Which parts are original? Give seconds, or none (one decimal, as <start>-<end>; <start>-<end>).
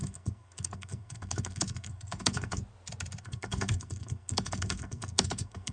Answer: 2.6-3.2